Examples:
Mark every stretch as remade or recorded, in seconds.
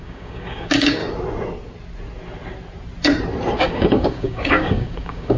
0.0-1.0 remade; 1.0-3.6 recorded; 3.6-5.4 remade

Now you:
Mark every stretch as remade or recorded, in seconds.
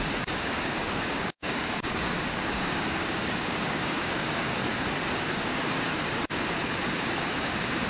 0.0-4.6 remade; 4.6-5.2 recorded; 5.2-5.9 remade; 5.9-7.3 recorded; 7.3-7.9 remade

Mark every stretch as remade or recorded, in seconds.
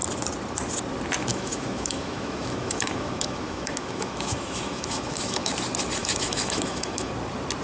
0.0-1.3 recorded; 1.3-5.5 remade; 5.5-6.0 recorded; 6.0-7.1 remade; 7.1-7.6 recorded